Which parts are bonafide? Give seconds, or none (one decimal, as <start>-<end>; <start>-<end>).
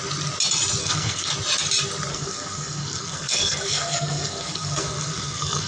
0.0-0.8; 1.3-2.1